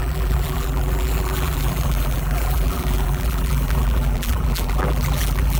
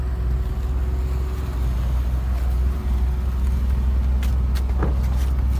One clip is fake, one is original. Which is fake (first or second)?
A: first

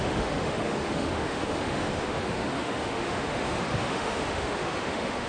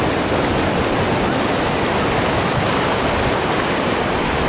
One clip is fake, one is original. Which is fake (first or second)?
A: first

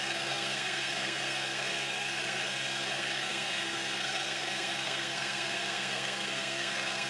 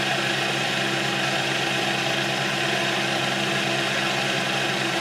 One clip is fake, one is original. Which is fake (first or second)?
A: first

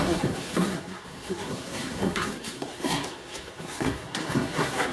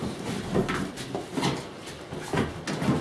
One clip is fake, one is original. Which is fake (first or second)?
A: first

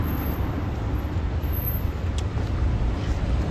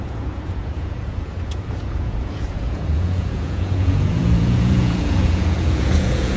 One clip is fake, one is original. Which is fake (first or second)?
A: second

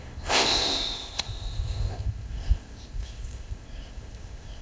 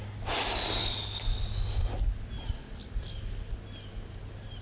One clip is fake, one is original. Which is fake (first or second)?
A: first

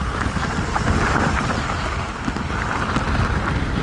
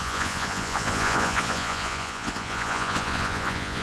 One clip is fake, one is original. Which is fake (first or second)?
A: second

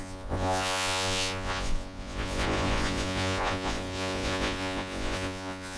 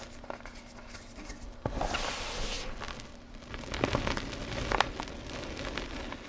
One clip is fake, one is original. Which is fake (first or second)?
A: first